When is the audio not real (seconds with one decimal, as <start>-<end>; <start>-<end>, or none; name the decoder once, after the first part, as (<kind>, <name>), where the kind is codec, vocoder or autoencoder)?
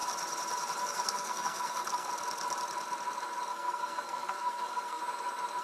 0.8-2.1 (codec, SNAC); 3.5-5.0